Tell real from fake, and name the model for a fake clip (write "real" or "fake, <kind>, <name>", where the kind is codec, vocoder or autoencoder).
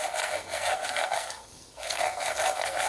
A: fake, codec, SNAC